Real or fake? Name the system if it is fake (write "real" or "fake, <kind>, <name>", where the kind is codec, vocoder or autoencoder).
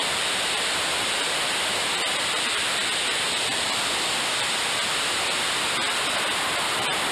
fake, vocoder, BigVGAN v2